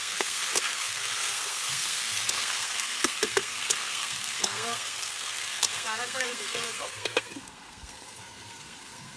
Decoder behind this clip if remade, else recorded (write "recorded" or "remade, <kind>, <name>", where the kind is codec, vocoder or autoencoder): remade, codec, SNAC